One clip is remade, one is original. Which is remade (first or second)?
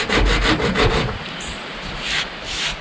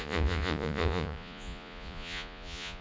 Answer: second